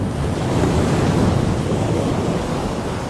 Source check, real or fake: fake